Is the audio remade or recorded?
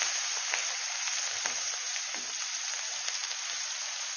remade